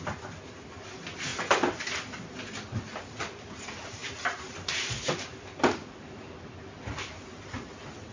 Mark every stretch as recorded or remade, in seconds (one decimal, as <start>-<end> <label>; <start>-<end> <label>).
0.0-8.1 recorded